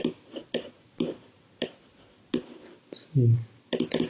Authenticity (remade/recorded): recorded